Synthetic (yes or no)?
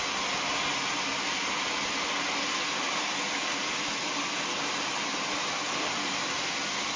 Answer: no